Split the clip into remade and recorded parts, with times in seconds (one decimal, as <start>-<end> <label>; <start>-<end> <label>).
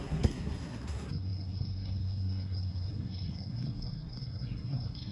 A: 0.0-5.1 remade